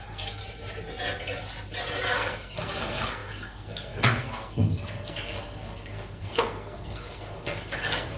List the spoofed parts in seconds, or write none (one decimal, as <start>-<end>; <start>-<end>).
0.0-0.4; 2.1-8.2